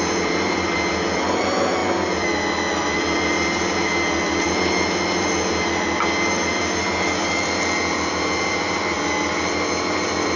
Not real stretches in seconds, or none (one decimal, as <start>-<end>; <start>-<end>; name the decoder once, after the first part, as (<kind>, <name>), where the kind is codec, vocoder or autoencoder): 0.0-10.4 (vocoder, BigVGAN v2)